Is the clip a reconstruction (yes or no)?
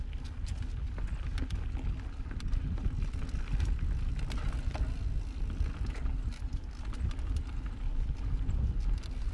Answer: no